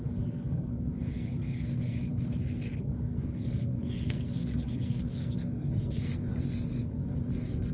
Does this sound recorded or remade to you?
remade